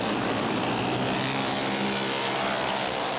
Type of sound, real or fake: real